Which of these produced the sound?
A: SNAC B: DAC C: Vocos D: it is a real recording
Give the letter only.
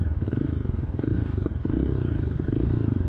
B